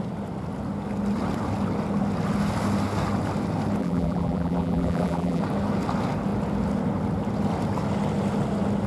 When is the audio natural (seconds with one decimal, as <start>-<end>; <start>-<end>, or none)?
0.0-3.8; 5.4-8.9